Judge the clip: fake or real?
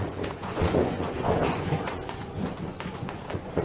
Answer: fake